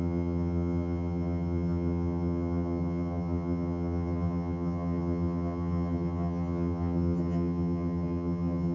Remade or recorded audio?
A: remade